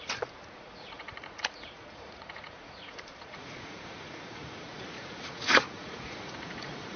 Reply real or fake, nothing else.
fake